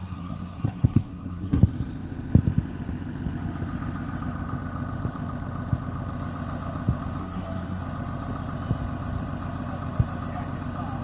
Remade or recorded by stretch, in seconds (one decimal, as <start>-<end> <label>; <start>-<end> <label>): 0.0-1.6 remade; 1.6-7.2 recorded; 7.2-7.8 remade; 7.8-11.0 recorded